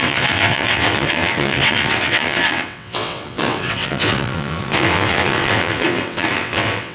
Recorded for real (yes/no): no